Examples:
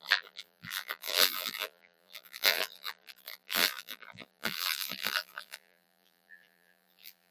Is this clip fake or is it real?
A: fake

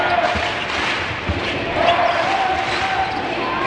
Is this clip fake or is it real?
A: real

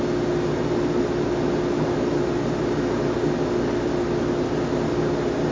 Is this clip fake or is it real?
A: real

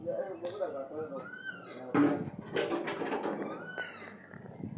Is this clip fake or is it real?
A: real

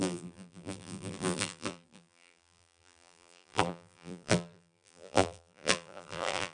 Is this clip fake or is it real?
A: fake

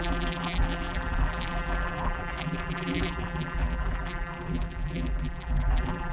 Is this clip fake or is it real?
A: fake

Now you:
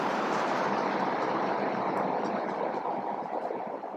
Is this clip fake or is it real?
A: fake